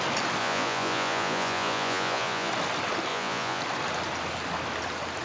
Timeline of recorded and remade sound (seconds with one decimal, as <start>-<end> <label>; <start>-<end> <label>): 0.0-0.4 recorded; 0.4-2.5 remade; 2.5-3.1 recorded; 3.1-3.6 remade; 3.6-5.2 recorded